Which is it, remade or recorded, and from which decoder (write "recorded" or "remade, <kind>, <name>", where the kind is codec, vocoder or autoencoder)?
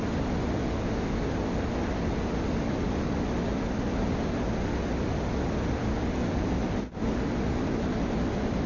recorded